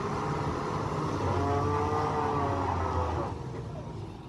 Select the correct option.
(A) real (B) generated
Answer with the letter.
A